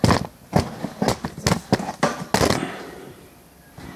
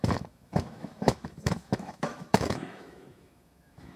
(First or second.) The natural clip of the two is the first